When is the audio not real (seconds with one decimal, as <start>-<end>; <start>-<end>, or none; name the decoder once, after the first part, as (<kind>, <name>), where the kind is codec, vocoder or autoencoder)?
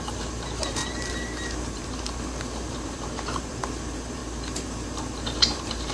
0.0-5.9 (vocoder, BigVGAN v2)